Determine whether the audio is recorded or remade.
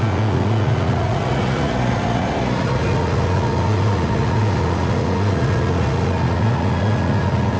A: remade